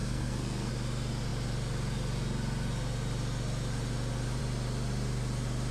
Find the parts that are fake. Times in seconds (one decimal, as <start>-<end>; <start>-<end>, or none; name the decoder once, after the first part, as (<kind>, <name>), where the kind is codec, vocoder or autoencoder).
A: 0.0-0.7 (codec, SNAC)